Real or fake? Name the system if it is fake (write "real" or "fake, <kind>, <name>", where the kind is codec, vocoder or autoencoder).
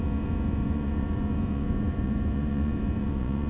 fake, vocoder, Vocos